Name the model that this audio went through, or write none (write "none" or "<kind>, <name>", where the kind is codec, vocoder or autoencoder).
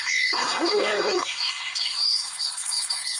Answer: codec, SNAC